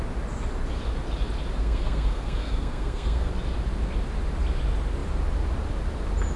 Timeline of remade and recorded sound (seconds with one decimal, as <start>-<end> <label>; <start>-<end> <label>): 0.0-1.6 recorded; 1.6-3.3 remade; 3.3-6.4 recorded